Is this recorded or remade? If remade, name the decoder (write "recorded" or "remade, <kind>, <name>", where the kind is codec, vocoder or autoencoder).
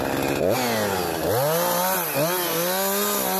recorded